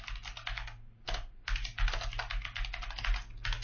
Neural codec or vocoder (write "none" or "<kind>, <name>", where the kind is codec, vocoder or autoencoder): none